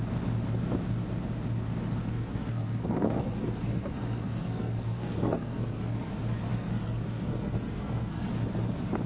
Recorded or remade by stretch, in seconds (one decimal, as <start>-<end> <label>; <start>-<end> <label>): 0.0-2.0 recorded; 2.0-6.1 remade; 6.1-6.5 recorded; 6.5-8.3 remade; 8.3-9.1 recorded